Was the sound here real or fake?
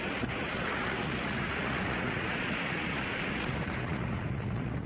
fake